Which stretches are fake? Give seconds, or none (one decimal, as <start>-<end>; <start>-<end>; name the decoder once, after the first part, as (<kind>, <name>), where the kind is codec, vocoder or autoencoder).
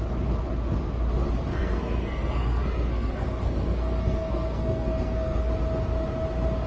1.5-5.5 (codec, SNAC)